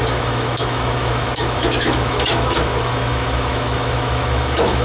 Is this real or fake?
fake